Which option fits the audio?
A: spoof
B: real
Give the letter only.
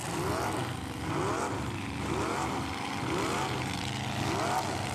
B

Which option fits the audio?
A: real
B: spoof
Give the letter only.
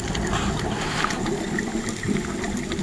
A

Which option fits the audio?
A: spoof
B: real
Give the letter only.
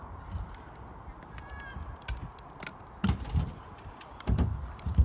B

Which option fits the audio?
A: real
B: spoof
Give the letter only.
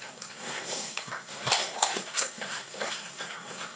B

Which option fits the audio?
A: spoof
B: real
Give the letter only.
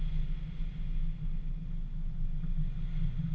B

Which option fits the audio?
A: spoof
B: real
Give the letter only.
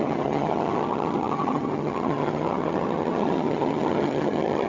A